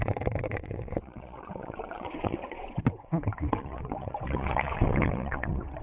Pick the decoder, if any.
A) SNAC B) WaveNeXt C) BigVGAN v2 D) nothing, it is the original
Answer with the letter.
B